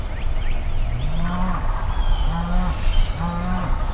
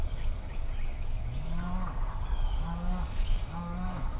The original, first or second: first